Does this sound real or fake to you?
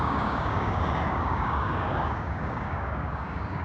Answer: fake